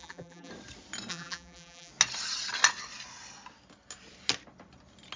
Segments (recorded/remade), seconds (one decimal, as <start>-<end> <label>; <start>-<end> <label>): 0.0-0.5 remade; 0.5-1.1 recorded; 1.1-1.9 remade; 1.9-5.2 recorded